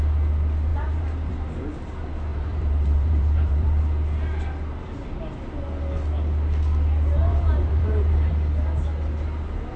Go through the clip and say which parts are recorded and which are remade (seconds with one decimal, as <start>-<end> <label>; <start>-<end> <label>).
0.0-0.7 recorded; 0.7-1.3 remade; 1.3-2.3 recorded; 2.3-3.8 remade; 3.8-7.2 recorded; 7.2-8.3 remade; 8.3-9.8 recorded